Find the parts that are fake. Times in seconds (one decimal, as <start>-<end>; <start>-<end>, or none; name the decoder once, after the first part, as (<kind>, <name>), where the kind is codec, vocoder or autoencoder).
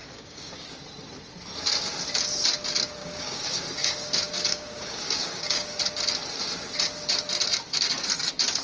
0.0-0.8 (codec, DAC); 3.0-5.8